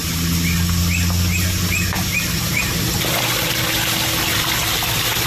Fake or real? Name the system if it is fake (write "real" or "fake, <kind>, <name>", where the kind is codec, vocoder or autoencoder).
real